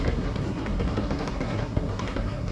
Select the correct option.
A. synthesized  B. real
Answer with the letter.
A